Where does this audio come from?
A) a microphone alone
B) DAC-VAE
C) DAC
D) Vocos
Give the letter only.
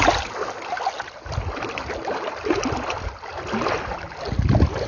A